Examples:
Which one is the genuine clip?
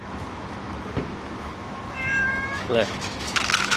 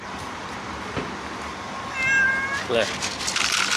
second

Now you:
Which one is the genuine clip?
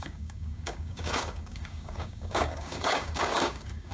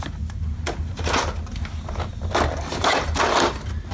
second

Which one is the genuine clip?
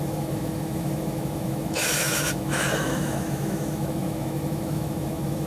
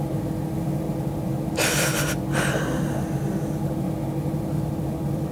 second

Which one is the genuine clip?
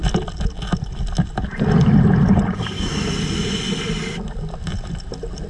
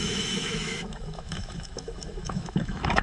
first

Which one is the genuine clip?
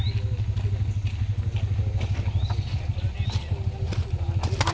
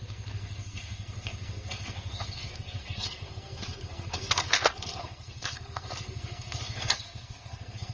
first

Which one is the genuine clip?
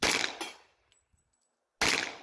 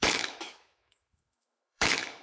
first